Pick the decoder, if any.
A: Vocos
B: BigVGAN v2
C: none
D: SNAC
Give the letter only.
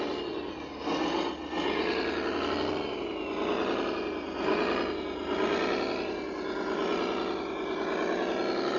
C